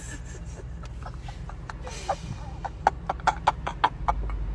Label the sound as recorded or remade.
recorded